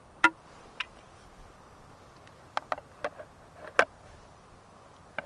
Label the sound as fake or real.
real